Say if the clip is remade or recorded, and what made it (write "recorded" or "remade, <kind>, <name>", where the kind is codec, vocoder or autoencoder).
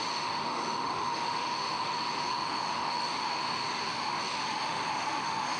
remade, autoencoder, DAC-VAE